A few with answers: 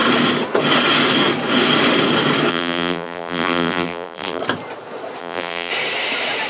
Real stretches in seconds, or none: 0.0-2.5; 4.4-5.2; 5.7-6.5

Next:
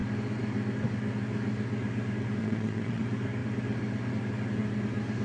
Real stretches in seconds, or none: 0.0-2.4; 3.0-5.2

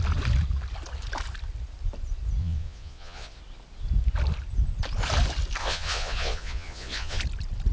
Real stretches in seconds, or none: 0.0-2.4; 3.4-5.6; 7.2-7.7